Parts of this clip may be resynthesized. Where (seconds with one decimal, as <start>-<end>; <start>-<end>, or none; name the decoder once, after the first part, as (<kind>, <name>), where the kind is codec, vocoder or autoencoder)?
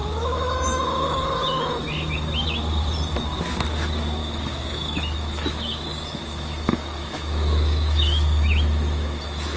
0.0-1.9 (autoencoder, DAC-VAE); 4.2-9.6